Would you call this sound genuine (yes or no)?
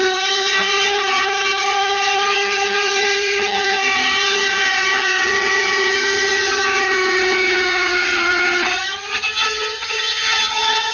no